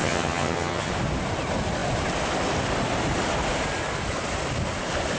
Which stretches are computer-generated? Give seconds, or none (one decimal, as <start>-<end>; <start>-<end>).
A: 0.0-0.9